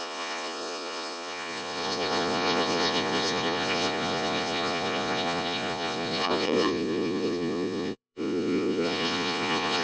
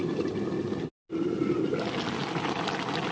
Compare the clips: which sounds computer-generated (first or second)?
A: first